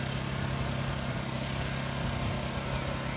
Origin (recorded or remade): recorded